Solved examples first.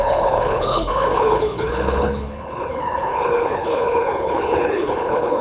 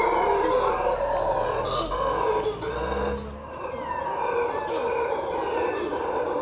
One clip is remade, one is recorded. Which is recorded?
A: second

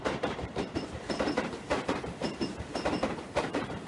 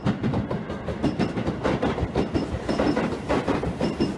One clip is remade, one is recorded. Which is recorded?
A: second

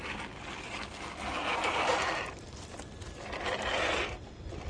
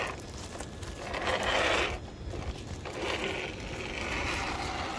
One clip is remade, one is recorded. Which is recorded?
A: second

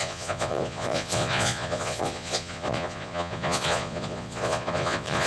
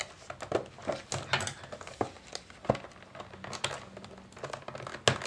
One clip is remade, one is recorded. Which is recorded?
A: second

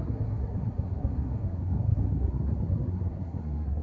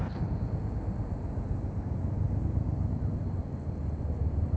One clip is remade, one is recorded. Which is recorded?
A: second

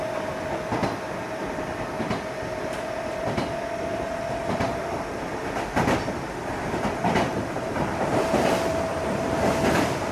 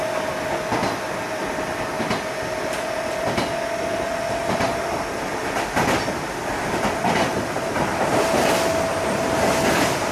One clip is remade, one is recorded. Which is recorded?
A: second